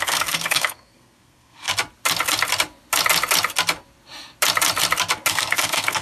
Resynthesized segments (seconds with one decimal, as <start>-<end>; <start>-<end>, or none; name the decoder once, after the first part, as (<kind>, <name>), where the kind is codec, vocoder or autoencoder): 0.0-1.7 (codec, SNAC); 5.3-6.0